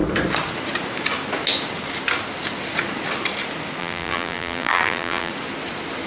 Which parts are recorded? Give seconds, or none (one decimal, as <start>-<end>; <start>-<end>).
0.0-3.8; 5.3-6.1